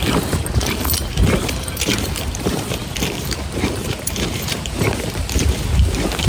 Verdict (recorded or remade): remade